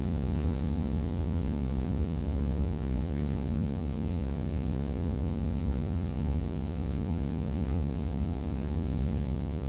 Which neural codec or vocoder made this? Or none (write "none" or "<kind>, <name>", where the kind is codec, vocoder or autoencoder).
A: vocoder, Vocos